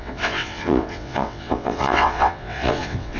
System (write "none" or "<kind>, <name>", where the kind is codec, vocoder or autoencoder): vocoder, WaveNeXt